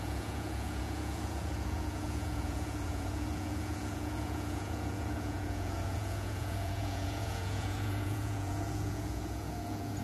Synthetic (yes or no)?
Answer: yes